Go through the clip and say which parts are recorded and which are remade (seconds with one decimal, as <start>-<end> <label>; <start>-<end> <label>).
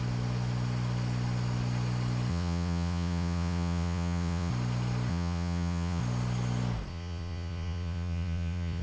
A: 0.0-2.3 recorded; 2.3-4.5 remade; 4.5-5.1 recorded; 5.1-6.0 remade; 6.0-6.9 recorded; 6.9-8.8 remade